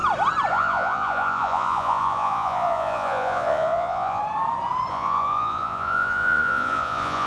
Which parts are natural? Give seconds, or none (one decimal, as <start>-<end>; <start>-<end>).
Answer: 0.0-0.5; 4.2-4.9